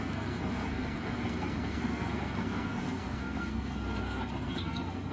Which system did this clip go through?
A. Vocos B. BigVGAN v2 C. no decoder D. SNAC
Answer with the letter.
D